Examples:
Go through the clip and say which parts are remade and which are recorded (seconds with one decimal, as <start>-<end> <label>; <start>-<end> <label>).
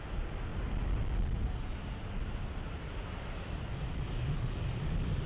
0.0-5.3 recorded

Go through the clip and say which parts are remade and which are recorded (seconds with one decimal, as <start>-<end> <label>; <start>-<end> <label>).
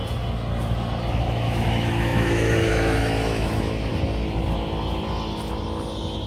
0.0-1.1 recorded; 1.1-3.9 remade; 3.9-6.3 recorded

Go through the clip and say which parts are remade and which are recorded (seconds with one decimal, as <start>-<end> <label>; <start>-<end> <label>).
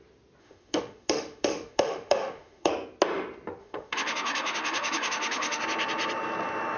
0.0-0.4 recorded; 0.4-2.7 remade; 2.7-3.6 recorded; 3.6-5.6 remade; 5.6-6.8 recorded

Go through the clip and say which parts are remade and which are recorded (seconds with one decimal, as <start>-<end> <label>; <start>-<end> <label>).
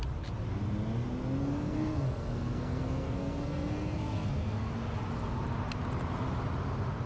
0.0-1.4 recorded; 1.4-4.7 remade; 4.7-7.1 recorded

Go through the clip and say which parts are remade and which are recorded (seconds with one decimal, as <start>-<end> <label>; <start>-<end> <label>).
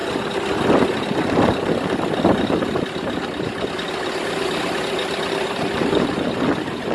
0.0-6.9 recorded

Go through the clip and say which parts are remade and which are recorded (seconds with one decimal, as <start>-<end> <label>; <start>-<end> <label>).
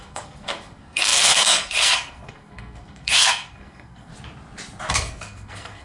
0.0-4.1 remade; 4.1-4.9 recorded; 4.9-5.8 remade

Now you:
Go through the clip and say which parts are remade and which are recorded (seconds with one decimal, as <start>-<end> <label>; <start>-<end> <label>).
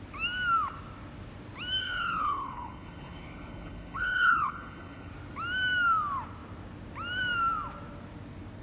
0.0-1.8 recorded; 1.8-5.1 remade; 5.1-8.6 recorded